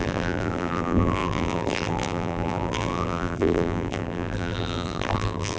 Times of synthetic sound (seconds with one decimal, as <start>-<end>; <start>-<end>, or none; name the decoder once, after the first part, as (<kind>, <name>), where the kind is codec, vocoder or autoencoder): 0.0-5.6 (vocoder, BigVGAN v2)